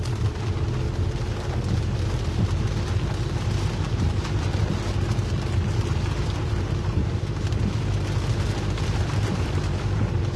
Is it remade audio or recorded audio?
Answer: recorded